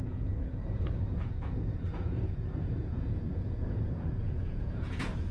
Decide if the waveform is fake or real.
fake